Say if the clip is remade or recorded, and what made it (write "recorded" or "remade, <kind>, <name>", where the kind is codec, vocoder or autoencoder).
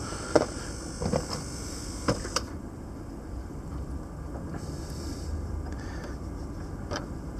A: remade, vocoder, BigVGAN v2